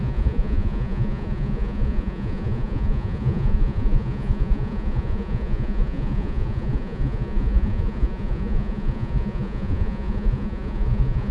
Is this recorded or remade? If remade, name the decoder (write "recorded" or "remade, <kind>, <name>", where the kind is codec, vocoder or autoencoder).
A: remade, vocoder, Vocos